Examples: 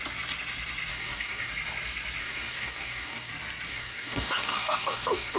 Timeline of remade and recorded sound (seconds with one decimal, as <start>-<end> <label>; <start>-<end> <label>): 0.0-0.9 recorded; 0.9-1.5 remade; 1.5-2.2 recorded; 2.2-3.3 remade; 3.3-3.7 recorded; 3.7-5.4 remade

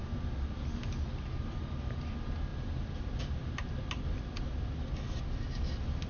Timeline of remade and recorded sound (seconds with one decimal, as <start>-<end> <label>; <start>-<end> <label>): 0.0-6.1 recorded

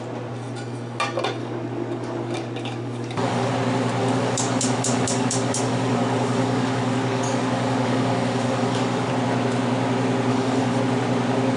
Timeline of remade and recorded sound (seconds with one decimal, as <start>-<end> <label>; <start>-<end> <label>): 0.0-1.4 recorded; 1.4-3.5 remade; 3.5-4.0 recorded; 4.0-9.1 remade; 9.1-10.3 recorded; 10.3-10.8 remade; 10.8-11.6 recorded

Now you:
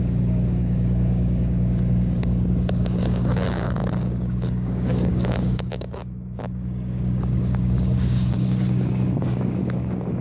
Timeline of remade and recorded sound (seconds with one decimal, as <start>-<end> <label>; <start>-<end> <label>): 0.0-10.2 remade

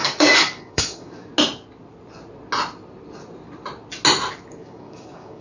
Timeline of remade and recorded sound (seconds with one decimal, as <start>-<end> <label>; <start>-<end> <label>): 0.0-1.3 remade; 1.3-4.5 recorded; 4.5-5.4 remade

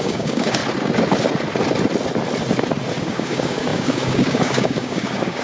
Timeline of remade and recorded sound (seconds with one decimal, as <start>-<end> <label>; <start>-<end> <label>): 0.0-0.6 remade; 0.6-3.0 recorded; 3.0-5.4 remade

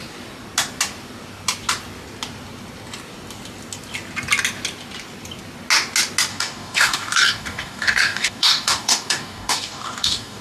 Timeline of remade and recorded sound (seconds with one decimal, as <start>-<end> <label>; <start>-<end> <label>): 0.0-6.3 recorded; 6.3-10.4 remade

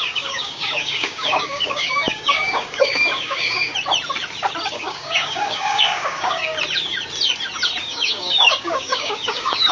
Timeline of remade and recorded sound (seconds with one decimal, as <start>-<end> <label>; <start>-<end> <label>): 0.0-3.7 remade; 3.7-4.7 recorded; 4.7-6.5 remade; 6.5-7.8 recorded; 7.8-9.7 remade